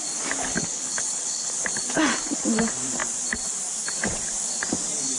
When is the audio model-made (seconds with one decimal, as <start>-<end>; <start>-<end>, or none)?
0.7-1.6